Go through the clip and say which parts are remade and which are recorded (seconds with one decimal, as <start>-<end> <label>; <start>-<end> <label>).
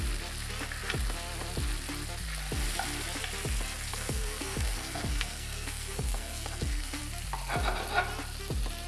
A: 0.0-3.9 recorded; 3.9-7.0 remade; 7.0-8.9 recorded